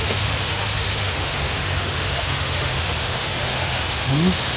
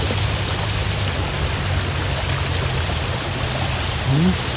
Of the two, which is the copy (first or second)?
first